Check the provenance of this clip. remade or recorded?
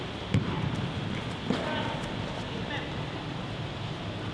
recorded